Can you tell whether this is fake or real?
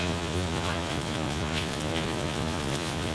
fake